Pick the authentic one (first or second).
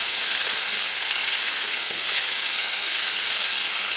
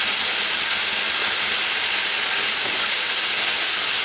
second